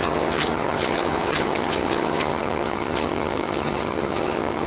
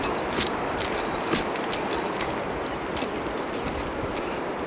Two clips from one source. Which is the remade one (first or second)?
first